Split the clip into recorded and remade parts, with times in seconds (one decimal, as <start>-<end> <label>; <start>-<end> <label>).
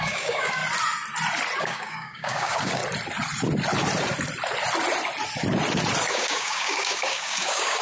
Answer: 0.0-0.6 remade; 0.6-1.6 recorded; 1.6-2.8 remade; 2.8-6.1 recorded; 6.1-7.8 remade